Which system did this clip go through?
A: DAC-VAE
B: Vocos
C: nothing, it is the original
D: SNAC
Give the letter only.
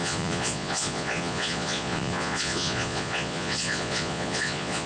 B